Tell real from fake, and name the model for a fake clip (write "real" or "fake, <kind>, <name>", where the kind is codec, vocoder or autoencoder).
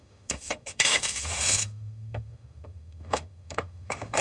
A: fake, autoencoder, DAC-VAE